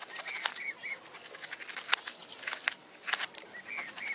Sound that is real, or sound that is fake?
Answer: real